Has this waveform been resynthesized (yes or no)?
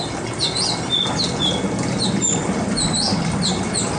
no